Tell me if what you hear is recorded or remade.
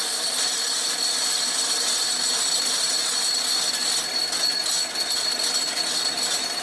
recorded